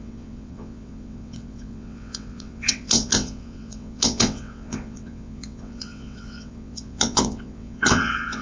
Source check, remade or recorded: remade